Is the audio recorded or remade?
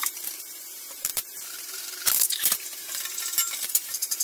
remade